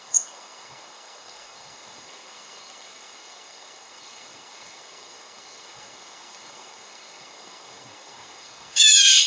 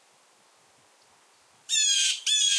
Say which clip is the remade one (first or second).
first